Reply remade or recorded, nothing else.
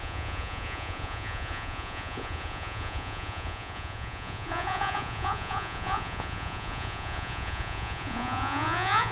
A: remade